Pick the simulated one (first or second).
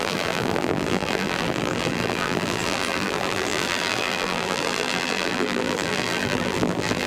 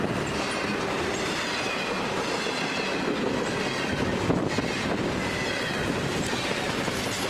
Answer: first